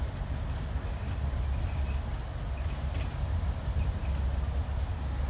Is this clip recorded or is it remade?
recorded